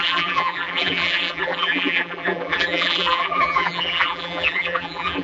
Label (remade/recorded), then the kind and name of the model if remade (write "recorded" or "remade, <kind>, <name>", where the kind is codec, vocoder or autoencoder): remade, vocoder, BigVGAN v2